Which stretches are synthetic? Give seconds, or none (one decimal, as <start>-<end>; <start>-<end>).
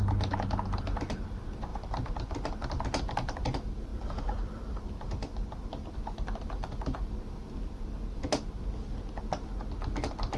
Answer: 1.7-2.7; 3.9-5.9